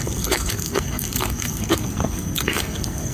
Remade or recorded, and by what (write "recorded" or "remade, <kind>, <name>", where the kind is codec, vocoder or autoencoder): remade, codec, SNAC